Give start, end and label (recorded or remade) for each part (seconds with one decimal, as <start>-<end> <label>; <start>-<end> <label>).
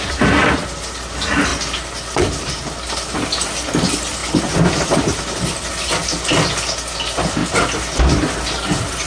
0.0-9.1 recorded